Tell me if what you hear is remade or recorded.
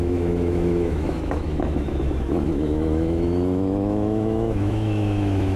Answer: remade